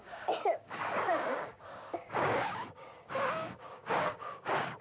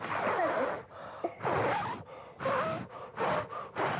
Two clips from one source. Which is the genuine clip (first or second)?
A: second